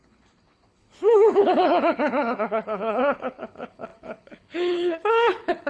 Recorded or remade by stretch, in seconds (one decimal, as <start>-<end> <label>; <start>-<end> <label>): 0.0-5.7 remade